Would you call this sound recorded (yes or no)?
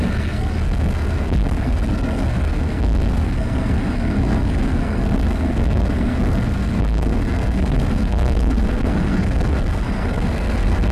no